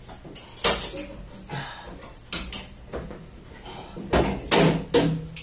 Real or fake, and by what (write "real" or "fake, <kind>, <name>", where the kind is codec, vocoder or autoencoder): real